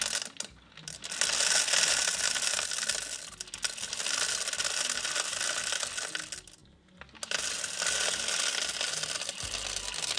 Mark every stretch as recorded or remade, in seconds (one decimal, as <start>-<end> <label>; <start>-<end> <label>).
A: 0.0-10.2 recorded